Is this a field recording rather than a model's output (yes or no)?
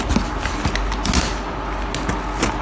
yes